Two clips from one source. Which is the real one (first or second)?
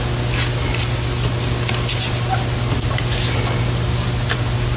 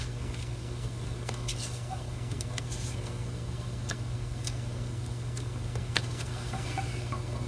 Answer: first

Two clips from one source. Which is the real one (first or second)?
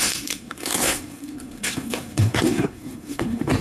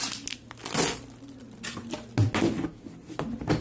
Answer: second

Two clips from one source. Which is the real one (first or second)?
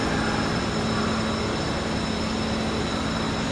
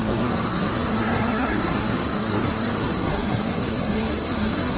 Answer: first